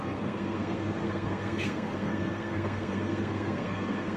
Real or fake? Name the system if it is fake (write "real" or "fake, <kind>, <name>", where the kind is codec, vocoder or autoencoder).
fake, codec, SNAC